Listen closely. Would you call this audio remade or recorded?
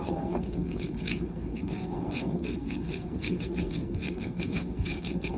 remade